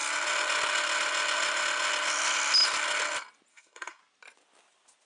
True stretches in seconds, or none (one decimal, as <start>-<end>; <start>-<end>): 0.0-3.5; 4.0-5.1